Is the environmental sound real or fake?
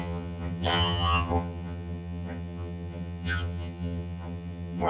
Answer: fake